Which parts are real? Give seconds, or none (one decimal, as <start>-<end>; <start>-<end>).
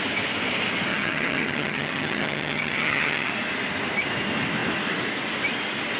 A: 0.0-0.9; 3.3-6.0